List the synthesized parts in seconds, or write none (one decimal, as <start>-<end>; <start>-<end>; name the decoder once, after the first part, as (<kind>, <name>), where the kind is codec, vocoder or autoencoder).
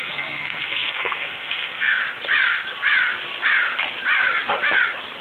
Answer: 0.0-2.0 (codec, SNAC)